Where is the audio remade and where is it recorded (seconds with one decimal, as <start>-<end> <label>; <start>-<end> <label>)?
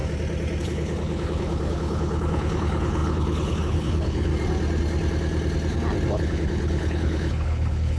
0.0-0.6 recorded; 0.6-4.3 remade; 4.3-6.1 recorded; 6.1-8.0 remade